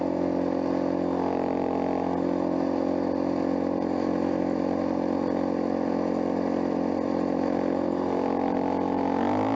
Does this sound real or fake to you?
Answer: real